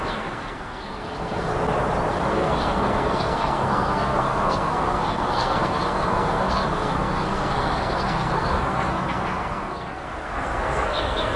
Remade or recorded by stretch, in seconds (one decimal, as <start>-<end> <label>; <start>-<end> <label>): 0.0-1.5 remade; 1.5-2.3 recorded; 2.3-11.4 remade